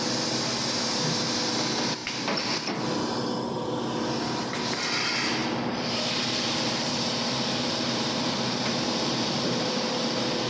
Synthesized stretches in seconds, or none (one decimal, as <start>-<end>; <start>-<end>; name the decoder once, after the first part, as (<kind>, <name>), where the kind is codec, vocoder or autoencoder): 5.4-10.5 (vocoder, BigVGAN v2)